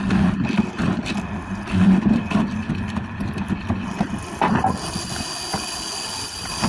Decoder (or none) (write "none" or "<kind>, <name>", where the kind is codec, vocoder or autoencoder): none